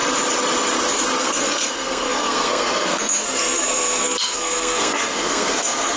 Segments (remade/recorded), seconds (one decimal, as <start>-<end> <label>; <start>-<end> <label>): 0.0-1.2 recorded; 1.2-6.0 remade